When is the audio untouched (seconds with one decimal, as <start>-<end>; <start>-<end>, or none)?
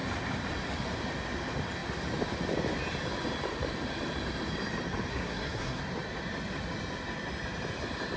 0.0-5.1; 5.8-8.2